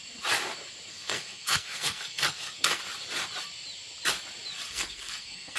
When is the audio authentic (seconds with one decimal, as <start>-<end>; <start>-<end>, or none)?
0.0-0.9; 2.8-4.7